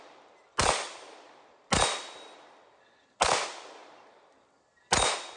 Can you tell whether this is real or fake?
real